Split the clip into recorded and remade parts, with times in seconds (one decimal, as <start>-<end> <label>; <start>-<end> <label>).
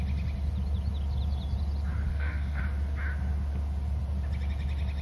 0.0-2.1 recorded; 2.1-2.6 remade; 2.6-5.0 recorded